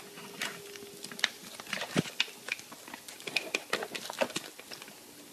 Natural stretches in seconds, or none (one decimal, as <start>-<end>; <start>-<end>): 0.0-5.3